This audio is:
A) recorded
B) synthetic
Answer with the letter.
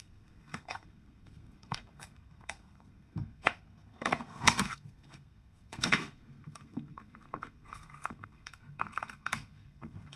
B